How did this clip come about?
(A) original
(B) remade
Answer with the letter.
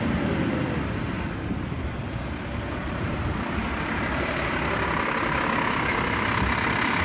A